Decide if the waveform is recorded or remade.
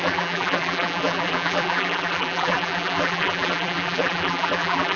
remade